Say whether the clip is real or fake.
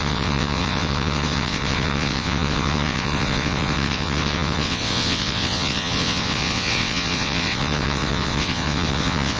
fake